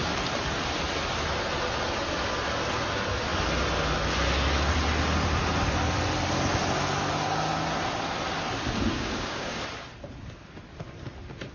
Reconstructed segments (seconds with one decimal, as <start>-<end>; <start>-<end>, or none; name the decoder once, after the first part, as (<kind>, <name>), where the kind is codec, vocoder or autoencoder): 8.9-9.6 (codec, DAC)